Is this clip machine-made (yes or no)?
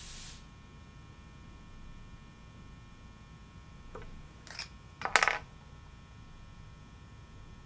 no